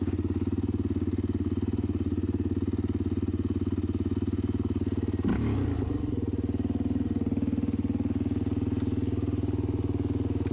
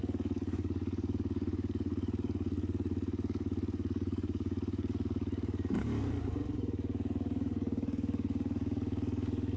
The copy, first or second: second